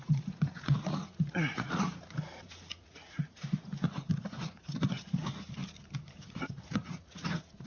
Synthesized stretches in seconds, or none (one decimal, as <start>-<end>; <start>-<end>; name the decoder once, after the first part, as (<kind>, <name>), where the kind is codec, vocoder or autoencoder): 0.0-5.3 (vocoder, Vocos); 6.2-7.7